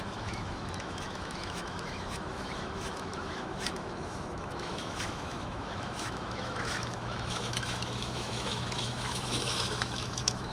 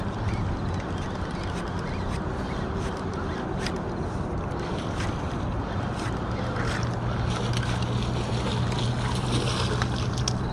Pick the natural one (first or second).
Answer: second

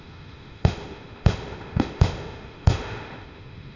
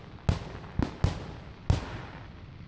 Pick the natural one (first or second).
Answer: second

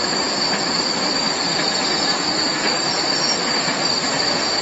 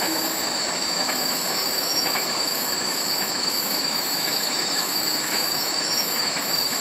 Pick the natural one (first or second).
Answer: first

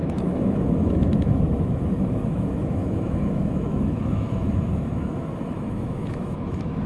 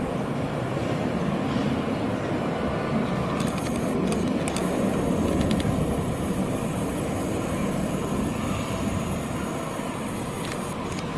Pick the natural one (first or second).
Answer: second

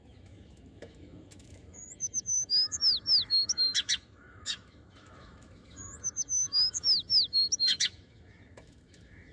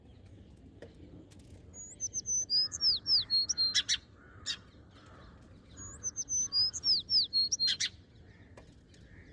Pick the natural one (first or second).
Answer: second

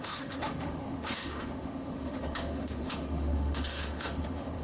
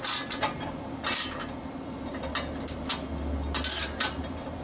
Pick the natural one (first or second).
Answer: second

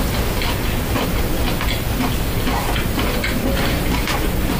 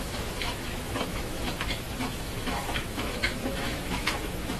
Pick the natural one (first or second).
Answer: first